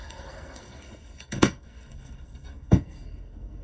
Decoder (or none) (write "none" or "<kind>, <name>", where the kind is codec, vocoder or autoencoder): codec, SNAC